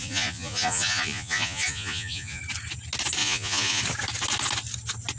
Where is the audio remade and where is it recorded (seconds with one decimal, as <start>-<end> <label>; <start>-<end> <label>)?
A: 0.0-2.4 remade; 2.4-3.2 recorded; 3.2-3.8 remade; 3.8-5.2 recorded